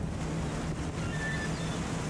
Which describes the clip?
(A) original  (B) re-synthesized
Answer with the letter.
A